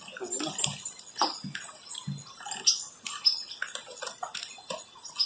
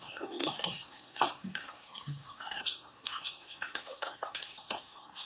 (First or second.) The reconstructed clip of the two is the second